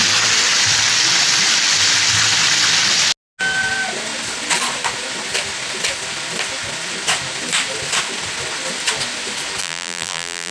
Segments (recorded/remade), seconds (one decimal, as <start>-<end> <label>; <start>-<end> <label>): 0.0-9.6 recorded; 9.6-10.5 remade